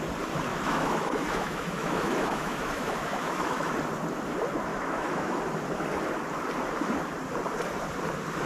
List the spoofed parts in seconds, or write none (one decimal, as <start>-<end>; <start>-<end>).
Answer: 0.5-3.7; 4.7-5.4